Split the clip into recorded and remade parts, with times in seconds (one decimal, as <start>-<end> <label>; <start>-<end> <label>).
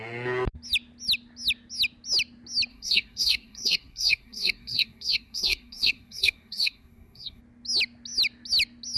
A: 0.0-2.7 recorded; 2.7-7.4 remade; 7.4-9.0 recorded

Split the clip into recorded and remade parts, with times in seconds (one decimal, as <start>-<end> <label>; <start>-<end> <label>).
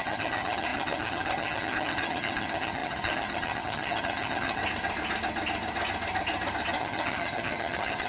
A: 0.0-4.6 remade; 4.6-6.8 recorded; 6.8-8.1 remade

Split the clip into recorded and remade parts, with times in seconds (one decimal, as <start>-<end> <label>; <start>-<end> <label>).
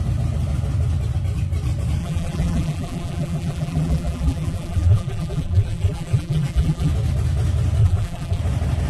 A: 0.0-2.0 recorded; 2.0-6.9 remade; 6.9-7.8 recorded; 7.8-8.4 remade; 8.4-8.9 recorded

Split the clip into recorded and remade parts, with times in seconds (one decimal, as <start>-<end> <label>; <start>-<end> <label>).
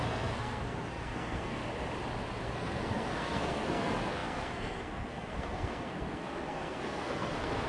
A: 0.0-1.6 remade; 1.6-2.4 recorded; 2.4-7.7 remade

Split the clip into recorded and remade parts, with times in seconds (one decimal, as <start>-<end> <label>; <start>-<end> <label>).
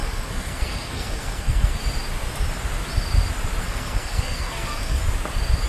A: 0.0-1.8 remade; 1.8-3.6 recorded; 3.6-5.0 remade; 5.0-5.7 recorded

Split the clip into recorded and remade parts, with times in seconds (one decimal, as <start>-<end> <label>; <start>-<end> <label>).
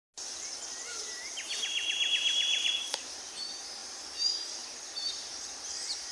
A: 0.0-0.7 recorded; 0.7-6.1 remade